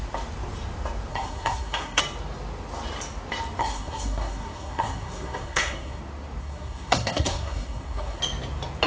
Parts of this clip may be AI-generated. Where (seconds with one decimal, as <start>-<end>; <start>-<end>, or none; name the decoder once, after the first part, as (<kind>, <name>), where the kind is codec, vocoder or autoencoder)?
1.1-2.0 (codec, SNAC); 3.6-6.0; 6.4-8.2